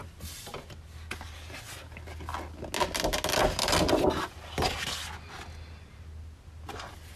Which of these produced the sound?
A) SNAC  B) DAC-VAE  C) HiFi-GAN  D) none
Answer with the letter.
D